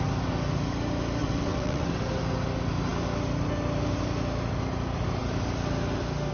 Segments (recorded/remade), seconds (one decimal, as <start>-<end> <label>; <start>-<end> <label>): 0.0-1.2 recorded; 1.2-2.0 remade; 2.0-6.3 recorded